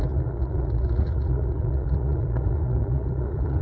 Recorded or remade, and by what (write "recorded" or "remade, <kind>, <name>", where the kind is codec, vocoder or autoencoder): remade, vocoder, Vocos